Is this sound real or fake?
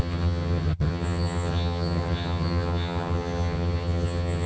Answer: fake